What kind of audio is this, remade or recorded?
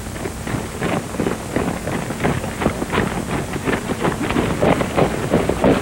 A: recorded